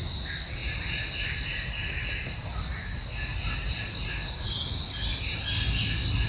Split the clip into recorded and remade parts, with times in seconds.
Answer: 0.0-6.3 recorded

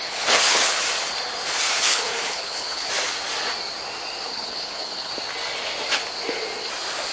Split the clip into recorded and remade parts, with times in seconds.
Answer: 0.0-0.8 remade; 0.8-1.7 recorded; 1.7-2.9 remade; 2.9-4.3 recorded; 4.3-5.1 remade; 5.1-7.1 recorded

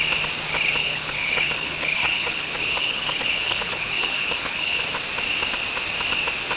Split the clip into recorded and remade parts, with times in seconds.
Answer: 0.0-0.8 recorded; 0.8-4.8 remade; 4.8-6.6 recorded

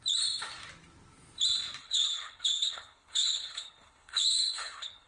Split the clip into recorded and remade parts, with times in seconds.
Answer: 0.0-1.8 recorded; 1.8-5.1 remade